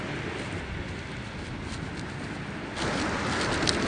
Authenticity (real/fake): real